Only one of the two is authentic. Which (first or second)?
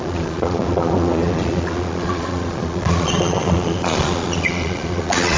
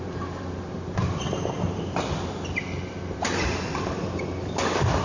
second